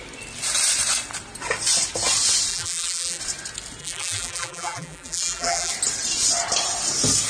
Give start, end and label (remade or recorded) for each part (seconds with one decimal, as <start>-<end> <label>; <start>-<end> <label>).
0.0-2.5 recorded; 2.5-3.2 remade; 3.2-3.8 recorded; 3.8-5.7 remade; 5.7-7.3 recorded